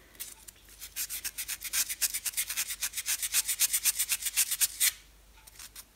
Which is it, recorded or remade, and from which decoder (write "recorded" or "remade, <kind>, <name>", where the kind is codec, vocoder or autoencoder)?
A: recorded